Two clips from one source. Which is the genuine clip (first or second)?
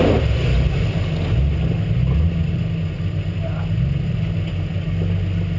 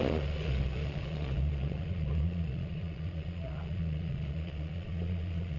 first